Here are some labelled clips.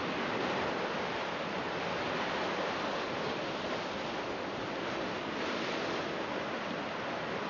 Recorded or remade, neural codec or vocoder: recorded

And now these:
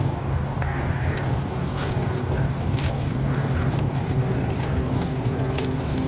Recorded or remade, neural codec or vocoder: remade, codec, DAC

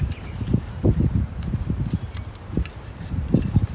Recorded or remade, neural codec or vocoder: remade, vocoder, BigVGAN v2